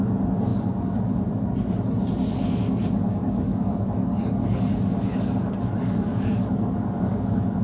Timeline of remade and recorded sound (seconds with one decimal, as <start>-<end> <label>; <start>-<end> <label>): 0.0-3.2 recorded; 3.2-7.6 remade